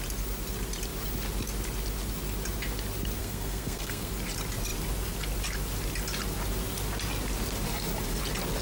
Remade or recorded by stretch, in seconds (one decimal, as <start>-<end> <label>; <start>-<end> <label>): 0.0-3.2 recorded; 3.2-4.1 remade; 4.1-8.6 recorded

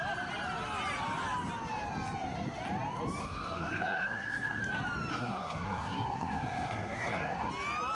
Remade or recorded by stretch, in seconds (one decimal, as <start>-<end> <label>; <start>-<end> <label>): 0.0-3.2 recorded; 3.2-4.6 remade; 4.6-5.1 recorded; 5.1-7.5 remade; 7.5-7.9 recorded

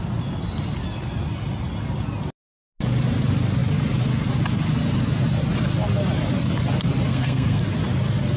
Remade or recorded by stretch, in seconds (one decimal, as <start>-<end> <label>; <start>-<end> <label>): 0.0-7.1 recorded; 7.1-7.6 remade; 7.6-8.4 recorded

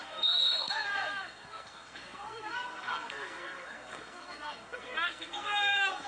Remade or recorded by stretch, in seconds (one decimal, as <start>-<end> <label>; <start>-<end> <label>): 0.0-6.1 remade

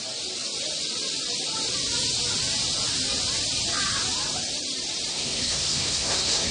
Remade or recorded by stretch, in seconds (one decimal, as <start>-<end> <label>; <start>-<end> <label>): 0.0-5.1 recorded; 5.1-6.5 remade

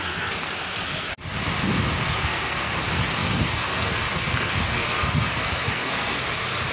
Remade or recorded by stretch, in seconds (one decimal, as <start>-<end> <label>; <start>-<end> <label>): 0.0-1.1 remade; 1.1-2.2 recorded; 2.2-6.7 remade